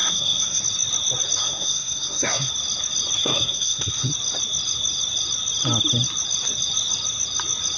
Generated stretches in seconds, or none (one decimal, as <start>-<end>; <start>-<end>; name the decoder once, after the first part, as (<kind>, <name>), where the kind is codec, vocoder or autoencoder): 0.0-0.6 (codec, SNAC); 1.4-2.5; 3.2-4.1